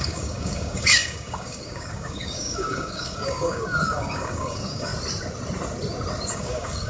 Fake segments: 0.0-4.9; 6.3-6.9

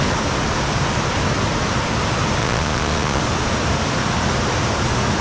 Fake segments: 2.4-3.2

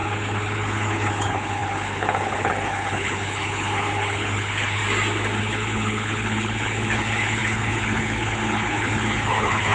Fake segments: 0.0-4.8; 5.4-9.7

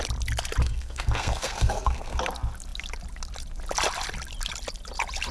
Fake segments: 0.6-2.2

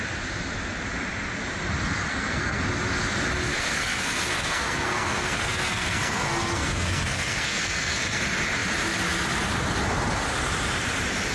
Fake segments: 2.1-2.6; 3.5-8.2

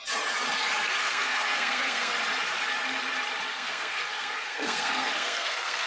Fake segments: 1.0-2.1; 3.5-5.9

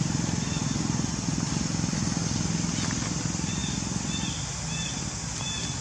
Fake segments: none

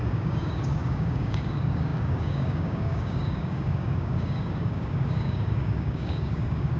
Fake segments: 0.0-6.8